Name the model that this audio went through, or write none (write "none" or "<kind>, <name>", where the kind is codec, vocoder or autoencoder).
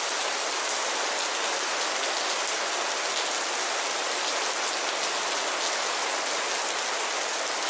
none